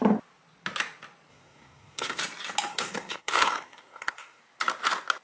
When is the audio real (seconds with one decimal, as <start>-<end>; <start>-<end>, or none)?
0.0-1.3; 2.2-2.7; 4.4-5.2